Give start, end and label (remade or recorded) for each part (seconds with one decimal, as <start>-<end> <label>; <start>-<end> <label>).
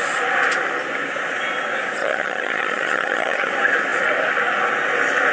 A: 0.0-2.0 recorded; 2.0-3.5 remade; 3.5-5.3 recorded